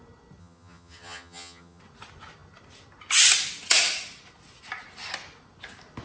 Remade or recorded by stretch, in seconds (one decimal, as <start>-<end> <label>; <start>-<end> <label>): 0.0-0.4 recorded; 0.4-1.8 remade; 1.8-6.0 recorded